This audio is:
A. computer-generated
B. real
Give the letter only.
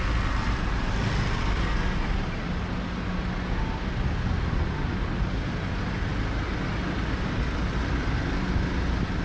B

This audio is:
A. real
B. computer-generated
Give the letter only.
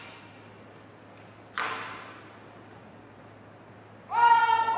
A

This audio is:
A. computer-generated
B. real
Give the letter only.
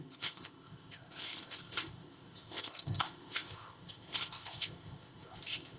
A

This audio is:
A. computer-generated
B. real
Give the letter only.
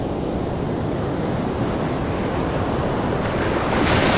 B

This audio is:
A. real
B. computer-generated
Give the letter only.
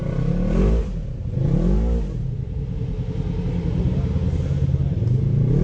A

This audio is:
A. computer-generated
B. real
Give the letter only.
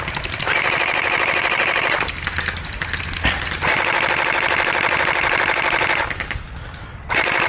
B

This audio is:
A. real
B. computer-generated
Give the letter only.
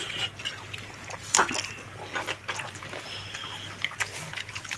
A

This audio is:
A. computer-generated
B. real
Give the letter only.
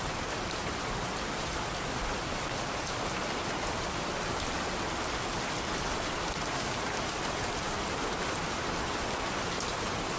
B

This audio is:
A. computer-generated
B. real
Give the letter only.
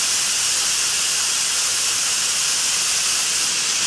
B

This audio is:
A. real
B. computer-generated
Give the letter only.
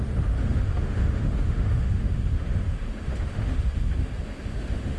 B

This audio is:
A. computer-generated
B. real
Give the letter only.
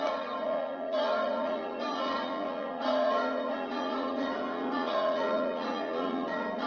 A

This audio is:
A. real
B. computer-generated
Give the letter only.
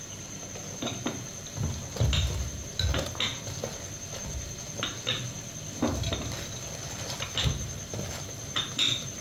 A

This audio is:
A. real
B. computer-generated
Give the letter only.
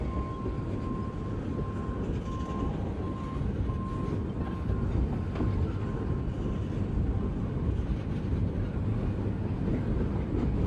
A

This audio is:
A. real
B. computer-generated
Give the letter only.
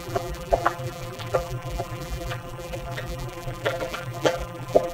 B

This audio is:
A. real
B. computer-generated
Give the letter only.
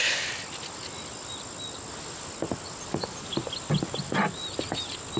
A